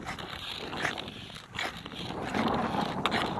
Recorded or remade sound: recorded